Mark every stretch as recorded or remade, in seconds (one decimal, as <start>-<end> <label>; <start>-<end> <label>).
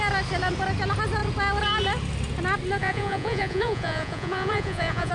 0.0-2.8 recorded; 2.8-5.1 remade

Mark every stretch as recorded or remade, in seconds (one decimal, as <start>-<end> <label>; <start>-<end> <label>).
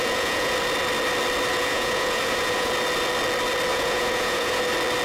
0.0-0.6 remade; 0.6-1.5 recorded; 1.5-2.7 remade; 2.7-3.7 recorded; 3.7-4.6 remade; 4.6-5.0 recorded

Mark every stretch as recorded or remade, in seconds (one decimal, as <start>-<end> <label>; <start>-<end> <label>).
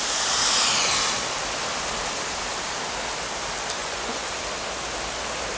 0.0-3.8 recorded; 3.8-4.3 remade; 4.3-5.6 recorded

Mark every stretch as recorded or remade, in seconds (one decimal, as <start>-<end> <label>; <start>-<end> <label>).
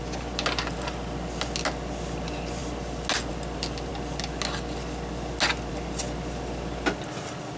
0.0-7.6 recorded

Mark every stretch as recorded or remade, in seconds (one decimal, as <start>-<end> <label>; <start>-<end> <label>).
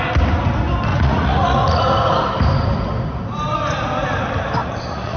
0.0-0.9 recorded; 0.9-1.8 remade; 1.8-4.6 recorded; 4.6-5.2 remade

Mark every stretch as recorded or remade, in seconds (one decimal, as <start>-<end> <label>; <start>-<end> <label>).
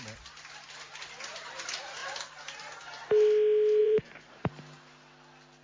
0.0-3.8 recorded; 3.8-4.5 remade; 4.5-5.6 recorded